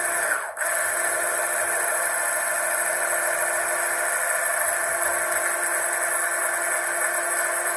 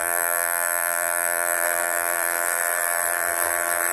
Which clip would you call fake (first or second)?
second